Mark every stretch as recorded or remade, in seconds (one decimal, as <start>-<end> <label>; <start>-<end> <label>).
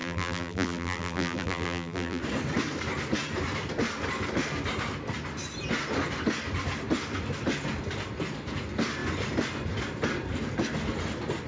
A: 0.0-2.2 remade; 2.2-11.5 recorded